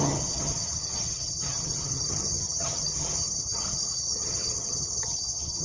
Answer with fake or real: fake